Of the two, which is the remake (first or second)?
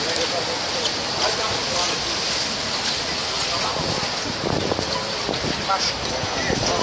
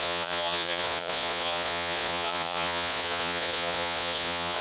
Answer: second